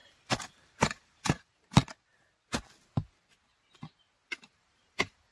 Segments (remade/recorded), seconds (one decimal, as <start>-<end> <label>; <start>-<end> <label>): 0.0-1.8 remade; 1.8-4.5 recorded; 4.5-5.3 remade